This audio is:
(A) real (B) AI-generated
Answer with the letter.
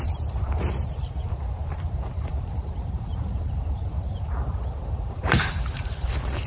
B